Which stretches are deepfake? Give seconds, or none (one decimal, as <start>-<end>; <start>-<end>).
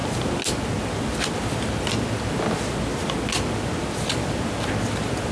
none